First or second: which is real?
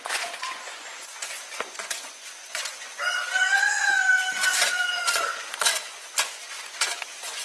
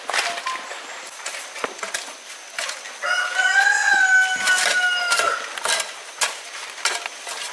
second